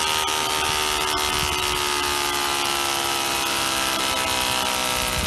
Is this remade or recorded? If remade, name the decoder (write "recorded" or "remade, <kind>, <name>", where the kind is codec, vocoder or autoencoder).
recorded